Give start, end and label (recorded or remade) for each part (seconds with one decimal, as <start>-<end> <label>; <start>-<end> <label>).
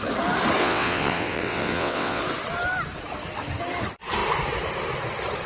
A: 0.0-0.6 recorded; 0.6-2.2 remade; 2.2-5.5 recorded